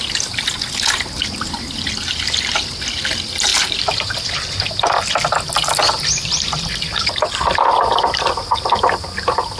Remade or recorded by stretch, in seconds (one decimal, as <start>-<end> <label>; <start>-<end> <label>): 0.0-3.5 recorded; 3.5-4.7 remade; 4.7-9.6 recorded